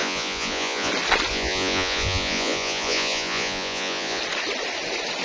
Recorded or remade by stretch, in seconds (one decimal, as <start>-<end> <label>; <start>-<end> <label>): 0.0-0.9 remade; 0.9-1.3 recorded; 1.3-4.2 remade; 4.2-5.2 recorded